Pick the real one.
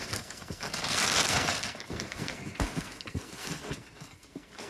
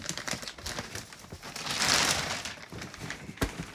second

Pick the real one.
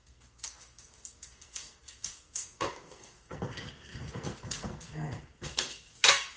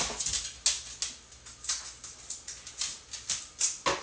second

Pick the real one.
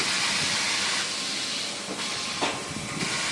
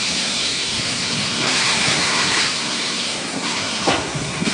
first